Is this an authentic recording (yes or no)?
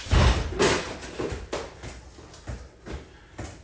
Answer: yes